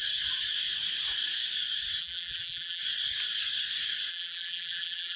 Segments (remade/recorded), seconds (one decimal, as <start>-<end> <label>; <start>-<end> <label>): 0.0-2.0 recorded; 2.0-2.8 remade; 2.8-4.1 recorded; 4.1-5.2 remade